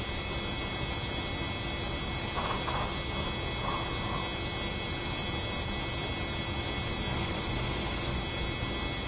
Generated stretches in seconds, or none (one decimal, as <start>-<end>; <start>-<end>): 7.1-8.2

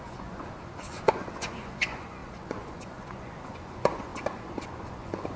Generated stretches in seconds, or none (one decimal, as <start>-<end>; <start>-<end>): 0.0-5.4